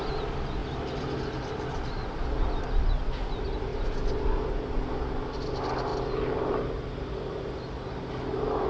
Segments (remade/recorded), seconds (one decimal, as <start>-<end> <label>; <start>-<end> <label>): 0.0-3.7 recorded; 3.7-4.4 remade; 4.4-5.9 recorded; 5.9-7.1 remade; 7.1-8.7 recorded